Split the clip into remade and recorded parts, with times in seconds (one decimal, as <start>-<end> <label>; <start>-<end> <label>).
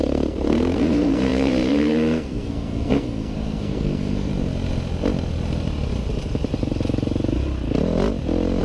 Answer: 0.0-4.3 remade; 4.3-8.6 recorded